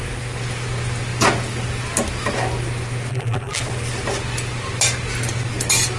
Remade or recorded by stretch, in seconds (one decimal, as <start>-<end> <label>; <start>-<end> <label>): 0.0-3.1 recorded; 3.1-3.6 remade; 3.6-6.0 recorded